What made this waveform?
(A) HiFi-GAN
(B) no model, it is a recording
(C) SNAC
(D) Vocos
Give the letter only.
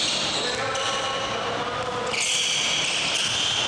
B